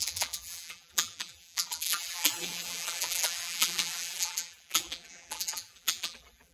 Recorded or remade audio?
remade